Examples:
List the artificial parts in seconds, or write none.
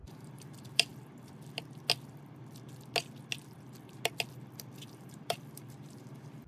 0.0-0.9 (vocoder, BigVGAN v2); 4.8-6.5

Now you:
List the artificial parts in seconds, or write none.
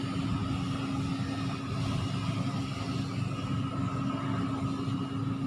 none